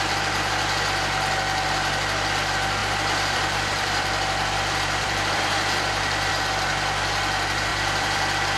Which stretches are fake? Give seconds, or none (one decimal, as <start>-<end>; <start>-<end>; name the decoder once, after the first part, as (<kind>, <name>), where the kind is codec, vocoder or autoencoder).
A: 2.8-6.3 (vocoder, BigVGAN v2); 7.7-8.6